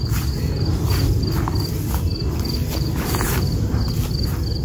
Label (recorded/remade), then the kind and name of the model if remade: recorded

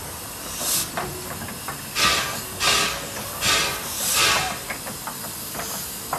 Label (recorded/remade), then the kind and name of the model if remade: recorded